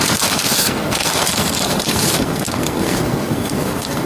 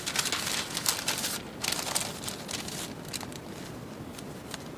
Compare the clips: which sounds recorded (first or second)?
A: second